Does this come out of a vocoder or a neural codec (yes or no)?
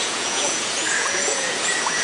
yes